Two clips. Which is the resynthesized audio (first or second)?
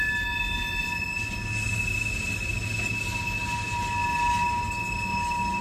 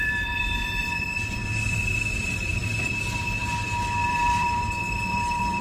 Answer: second